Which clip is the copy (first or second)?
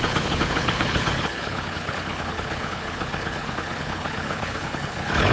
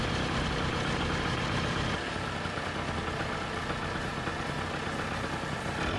first